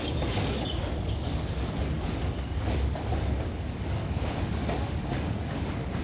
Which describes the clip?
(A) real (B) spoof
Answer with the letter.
B